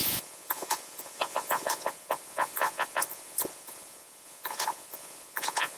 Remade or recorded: remade